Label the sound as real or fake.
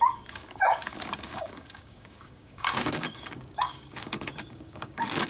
fake